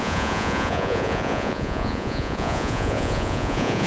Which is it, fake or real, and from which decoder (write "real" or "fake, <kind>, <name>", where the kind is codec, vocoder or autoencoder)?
fake, vocoder, Vocos